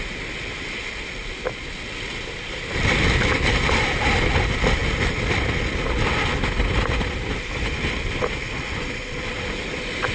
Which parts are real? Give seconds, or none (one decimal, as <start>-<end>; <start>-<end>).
0.0-10.1